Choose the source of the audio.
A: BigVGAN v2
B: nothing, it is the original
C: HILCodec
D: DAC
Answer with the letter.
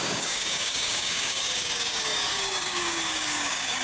D